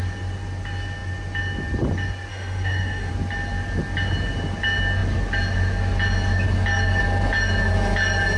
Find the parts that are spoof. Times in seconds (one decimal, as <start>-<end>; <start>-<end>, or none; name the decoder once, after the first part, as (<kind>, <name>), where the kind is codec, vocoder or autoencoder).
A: 2.3-3.1 (autoencoder, DAC-VAE)